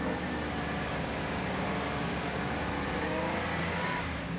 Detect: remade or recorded remade